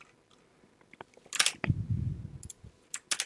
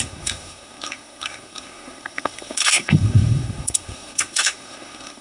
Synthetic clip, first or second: second